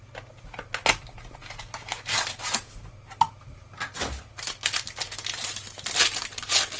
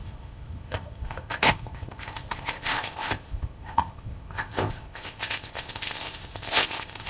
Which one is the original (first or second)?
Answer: first